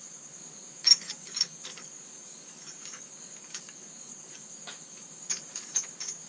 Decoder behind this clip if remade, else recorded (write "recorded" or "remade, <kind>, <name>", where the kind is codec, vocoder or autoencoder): remade, codec, DAC